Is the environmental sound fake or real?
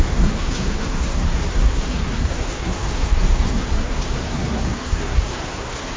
fake